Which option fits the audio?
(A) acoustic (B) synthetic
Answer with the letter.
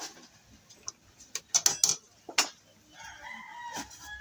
A